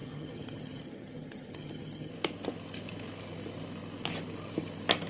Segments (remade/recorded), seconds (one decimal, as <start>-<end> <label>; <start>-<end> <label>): 0.0-2.1 remade; 2.1-5.1 recorded